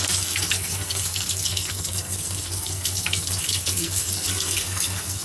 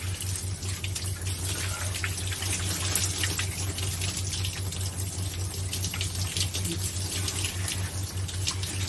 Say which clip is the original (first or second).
second